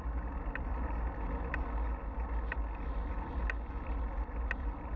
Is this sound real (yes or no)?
yes